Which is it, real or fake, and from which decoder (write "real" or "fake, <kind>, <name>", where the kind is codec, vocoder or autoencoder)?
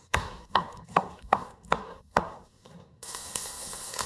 fake, codec, SNAC